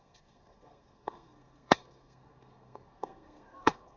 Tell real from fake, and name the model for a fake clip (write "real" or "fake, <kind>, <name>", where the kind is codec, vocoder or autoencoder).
fake, codec, SNAC